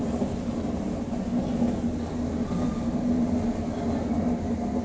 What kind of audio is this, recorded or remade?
recorded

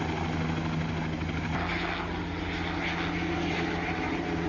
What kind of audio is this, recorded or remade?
recorded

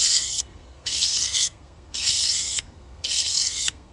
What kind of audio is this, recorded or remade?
remade